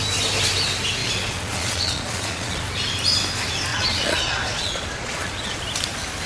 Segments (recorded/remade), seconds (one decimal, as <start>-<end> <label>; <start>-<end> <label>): 0.0-1.0 recorded; 1.0-2.6 remade; 2.6-3.7 recorded; 3.7-5.6 remade; 5.6-6.3 recorded